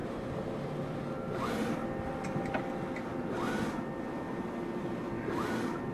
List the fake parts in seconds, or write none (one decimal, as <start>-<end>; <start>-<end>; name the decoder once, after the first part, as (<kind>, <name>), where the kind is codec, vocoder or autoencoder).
0.0-1.0 (vocoder, BigVGAN v2)